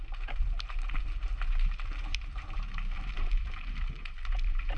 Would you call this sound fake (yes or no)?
yes